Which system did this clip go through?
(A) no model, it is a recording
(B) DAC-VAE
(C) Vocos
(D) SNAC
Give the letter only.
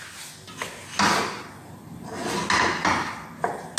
A